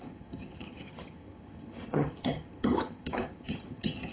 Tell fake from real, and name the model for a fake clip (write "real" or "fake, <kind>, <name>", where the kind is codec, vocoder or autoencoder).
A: fake, vocoder, HiFi-GAN